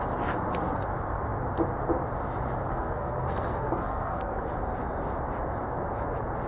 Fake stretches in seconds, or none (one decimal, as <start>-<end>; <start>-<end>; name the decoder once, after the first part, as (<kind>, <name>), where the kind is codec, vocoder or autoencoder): 2.7-4.5 (codec, SNAC)